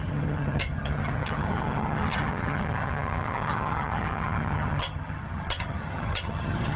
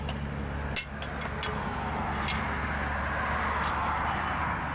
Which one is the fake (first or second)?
first